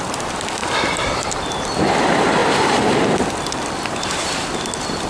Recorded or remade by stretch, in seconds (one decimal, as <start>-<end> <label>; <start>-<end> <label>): 0.0-0.6 recorded; 0.6-1.6 remade; 1.6-2.4 recorded; 2.4-3.2 remade; 3.2-5.1 recorded